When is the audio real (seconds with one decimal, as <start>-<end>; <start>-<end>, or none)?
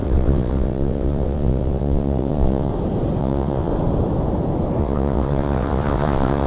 2.7-3.2; 3.7-4.8